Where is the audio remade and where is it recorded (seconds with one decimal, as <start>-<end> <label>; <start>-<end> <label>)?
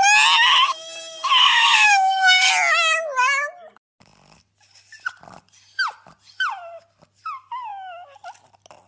0.0-1.4 recorded; 1.4-2.5 remade; 2.5-8.9 recorded